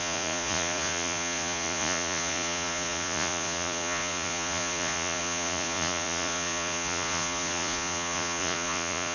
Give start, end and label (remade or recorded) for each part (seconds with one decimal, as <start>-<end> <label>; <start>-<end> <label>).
0.0-9.1 remade